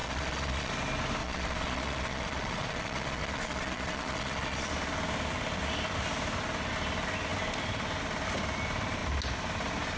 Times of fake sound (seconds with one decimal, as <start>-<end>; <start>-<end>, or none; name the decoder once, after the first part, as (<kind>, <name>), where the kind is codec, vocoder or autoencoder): 0.0-0.7 (vocoder, Vocos); 1.2-4.7